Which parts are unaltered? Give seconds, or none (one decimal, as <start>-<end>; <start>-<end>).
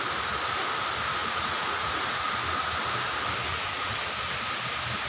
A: 0.0-1.2; 2.3-3.5; 4.1-5.1